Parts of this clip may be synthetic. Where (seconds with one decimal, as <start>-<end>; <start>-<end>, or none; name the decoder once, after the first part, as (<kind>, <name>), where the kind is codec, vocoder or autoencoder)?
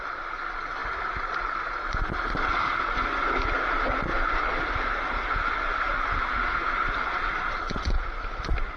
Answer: none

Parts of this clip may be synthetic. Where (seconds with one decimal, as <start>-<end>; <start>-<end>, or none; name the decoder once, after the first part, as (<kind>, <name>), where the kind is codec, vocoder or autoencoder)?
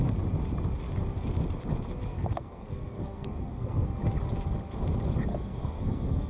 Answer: 2.1-3.9 (codec, SNAC); 5.3-6.3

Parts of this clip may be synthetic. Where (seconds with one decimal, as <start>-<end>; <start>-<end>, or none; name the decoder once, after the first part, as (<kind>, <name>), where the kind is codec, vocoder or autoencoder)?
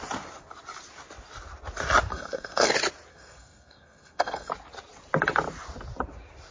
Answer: 2.1-2.7 (codec, SNAC); 3.1-4.5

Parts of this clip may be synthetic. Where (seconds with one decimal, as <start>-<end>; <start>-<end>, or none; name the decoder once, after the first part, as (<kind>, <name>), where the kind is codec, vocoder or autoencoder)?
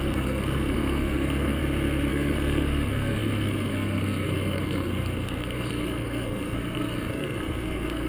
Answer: 0.0-1.6 (codec, SNAC); 2.1-8.1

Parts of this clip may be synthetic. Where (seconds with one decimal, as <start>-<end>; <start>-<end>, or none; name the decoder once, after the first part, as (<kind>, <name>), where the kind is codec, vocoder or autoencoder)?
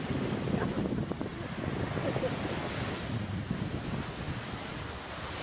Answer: none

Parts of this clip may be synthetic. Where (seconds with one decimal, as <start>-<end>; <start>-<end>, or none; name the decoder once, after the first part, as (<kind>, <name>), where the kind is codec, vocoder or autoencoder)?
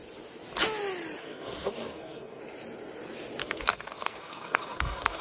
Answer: 1.2-2.4 (codec, SNAC); 3.4-5.2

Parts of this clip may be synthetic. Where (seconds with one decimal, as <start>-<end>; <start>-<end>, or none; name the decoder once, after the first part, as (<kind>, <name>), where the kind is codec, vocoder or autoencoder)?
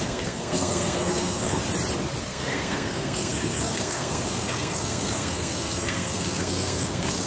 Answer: 0.0-1.6 (codec, SNAC); 2.2-7.3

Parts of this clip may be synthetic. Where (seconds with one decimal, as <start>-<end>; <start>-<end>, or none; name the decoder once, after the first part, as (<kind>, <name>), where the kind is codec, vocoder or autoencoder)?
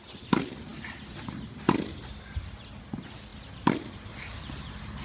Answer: none